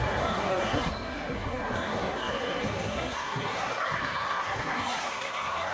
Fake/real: fake